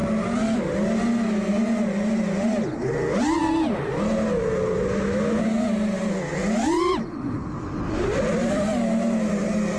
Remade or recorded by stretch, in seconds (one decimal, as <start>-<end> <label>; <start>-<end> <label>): 0.0-9.8 recorded